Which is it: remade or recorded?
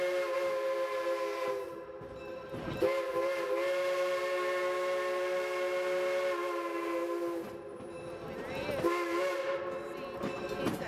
recorded